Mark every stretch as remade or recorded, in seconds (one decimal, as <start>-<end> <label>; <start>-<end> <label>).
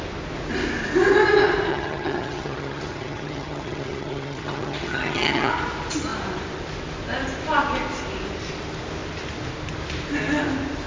0.0-1.7 recorded; 1.7-5.5 remade; 5.5-10.9 recorded